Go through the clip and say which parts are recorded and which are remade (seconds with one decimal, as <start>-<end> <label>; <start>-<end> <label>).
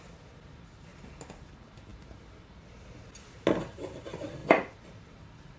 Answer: 0.0-0.9 recorded; 0.9-1.5 remade; 1.5-4.4 recorded; 4.4-5.6 remade